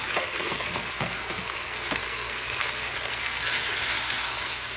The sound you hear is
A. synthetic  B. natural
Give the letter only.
A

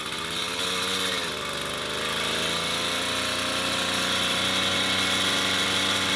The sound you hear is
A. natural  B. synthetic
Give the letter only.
A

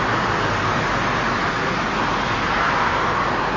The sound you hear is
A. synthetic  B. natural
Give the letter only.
B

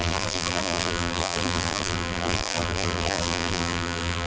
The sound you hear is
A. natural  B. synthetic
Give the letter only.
B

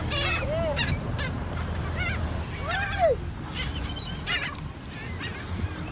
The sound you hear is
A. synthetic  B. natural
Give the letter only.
B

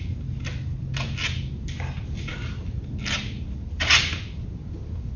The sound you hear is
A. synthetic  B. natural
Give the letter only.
B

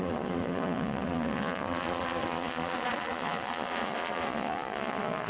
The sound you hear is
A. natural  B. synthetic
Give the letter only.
B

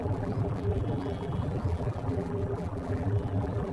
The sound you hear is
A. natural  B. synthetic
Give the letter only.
B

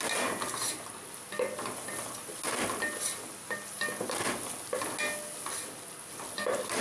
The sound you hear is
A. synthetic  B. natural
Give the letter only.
B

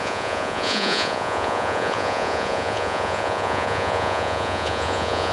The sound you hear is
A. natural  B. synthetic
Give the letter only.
B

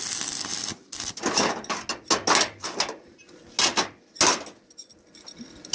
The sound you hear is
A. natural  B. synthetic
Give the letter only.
A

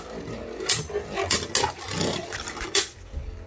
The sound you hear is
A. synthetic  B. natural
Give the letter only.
B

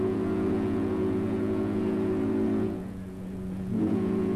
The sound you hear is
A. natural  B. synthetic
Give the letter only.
B